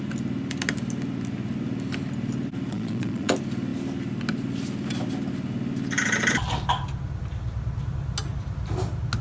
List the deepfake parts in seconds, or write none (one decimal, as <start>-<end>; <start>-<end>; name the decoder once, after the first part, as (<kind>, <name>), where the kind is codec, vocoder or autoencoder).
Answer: 2.7-3.3 (vocoder, Vocos)